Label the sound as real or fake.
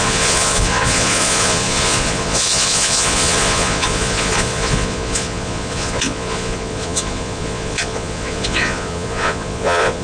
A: fake